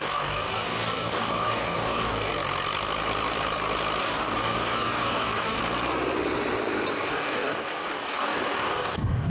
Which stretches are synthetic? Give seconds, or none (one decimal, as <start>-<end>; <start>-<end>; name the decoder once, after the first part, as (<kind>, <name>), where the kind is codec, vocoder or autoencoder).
0.0-2.3 (codec, DAC); 4.0-5.6; 6.9-9.3